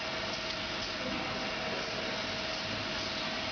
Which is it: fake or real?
real